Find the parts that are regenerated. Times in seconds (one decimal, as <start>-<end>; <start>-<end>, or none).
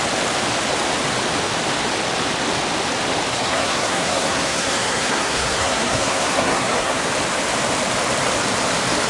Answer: 3.3-7.1